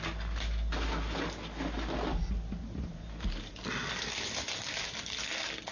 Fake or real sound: real